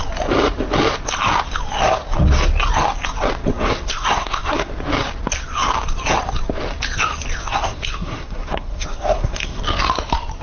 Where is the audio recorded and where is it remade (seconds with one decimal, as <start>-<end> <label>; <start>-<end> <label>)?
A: 0.0-3.5 recorded; 3.5-4.7 remade; 4.7-7.4 recorded; 7.4-9.6 remade; 9.6-10.4 recorded